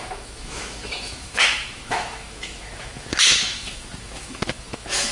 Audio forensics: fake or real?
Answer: fake